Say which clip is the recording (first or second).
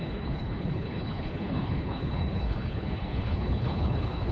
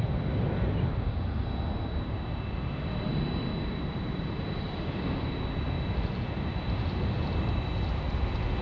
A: second